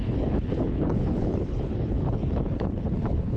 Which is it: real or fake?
fake